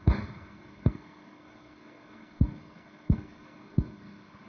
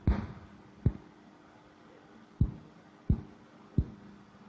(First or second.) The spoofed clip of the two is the first